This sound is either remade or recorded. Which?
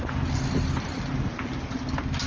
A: recorded